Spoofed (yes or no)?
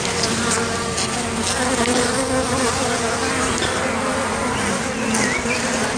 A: no